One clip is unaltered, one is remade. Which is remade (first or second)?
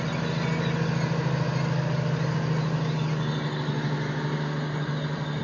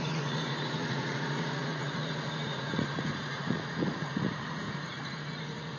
second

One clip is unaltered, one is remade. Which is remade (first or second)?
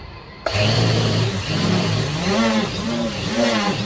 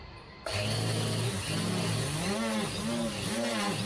first